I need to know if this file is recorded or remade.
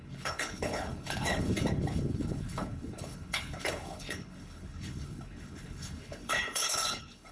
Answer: remade